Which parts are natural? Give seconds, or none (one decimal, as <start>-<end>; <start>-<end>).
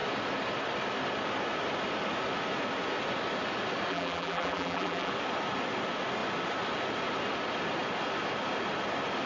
0.0-3.9; 5.1-9.3